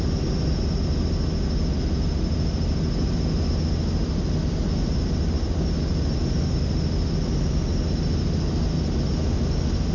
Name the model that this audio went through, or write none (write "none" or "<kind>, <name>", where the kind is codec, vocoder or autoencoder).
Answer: none